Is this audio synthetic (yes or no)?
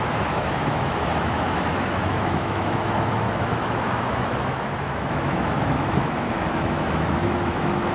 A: yes